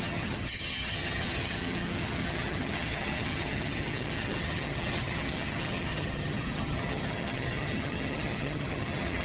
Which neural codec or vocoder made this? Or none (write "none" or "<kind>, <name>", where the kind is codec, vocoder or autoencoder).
vocoder, HiFi-GAN